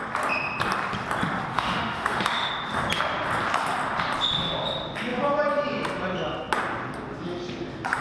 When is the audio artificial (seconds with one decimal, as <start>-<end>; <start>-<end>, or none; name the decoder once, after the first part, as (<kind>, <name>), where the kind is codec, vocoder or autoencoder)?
1.5-2.5 (autoencoder, DAC-VAE)